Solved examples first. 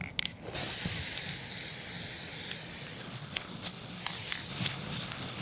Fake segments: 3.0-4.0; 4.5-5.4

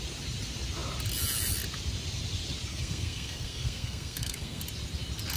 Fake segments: 2.7-4.6

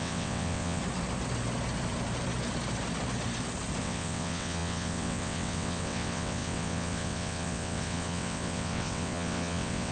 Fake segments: 0.0-0.8; 3.8-9.9